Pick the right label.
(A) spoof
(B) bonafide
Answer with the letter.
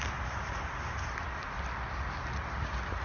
B